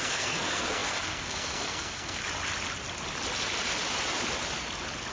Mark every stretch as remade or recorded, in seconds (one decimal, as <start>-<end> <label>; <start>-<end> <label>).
0.0-2.2 remade; 2.2-5.1 recorded